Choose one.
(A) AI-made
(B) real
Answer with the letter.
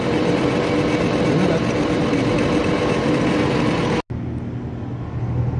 B